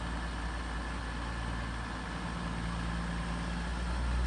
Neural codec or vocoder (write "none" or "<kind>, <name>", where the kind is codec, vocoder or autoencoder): none